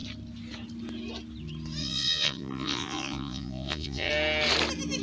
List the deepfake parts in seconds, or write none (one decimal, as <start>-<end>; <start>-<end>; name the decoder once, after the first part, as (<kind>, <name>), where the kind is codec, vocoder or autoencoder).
1.8-4.1 (vocoder, Vocos)